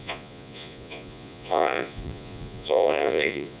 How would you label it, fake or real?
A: fake